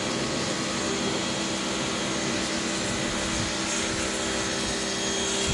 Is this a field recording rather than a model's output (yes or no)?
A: yes